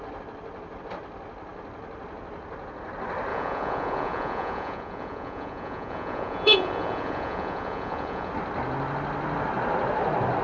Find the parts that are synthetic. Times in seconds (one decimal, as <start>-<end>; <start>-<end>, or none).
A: 3.3-8.3